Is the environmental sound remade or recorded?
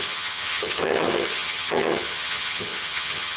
remade